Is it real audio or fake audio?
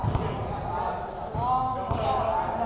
real